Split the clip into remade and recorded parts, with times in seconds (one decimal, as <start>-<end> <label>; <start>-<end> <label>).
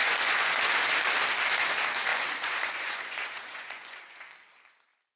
0.0-0.5 remade; 0.5-2.1 recorded; 2.1-4.3 remade; 4.3-5.2 recorded